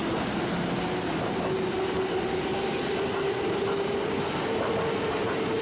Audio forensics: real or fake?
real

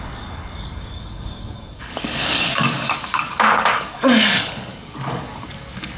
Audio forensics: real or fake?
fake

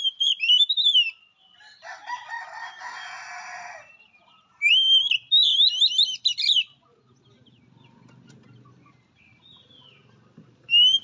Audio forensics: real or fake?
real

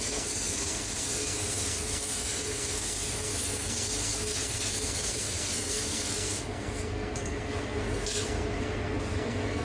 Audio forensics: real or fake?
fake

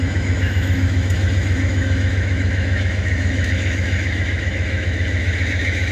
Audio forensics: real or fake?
fake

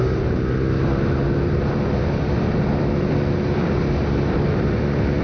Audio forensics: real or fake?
real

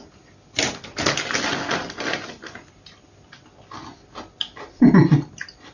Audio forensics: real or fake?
real